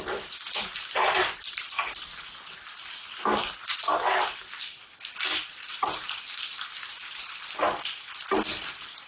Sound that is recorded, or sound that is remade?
recorded